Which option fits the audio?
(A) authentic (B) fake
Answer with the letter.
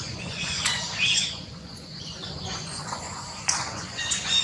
B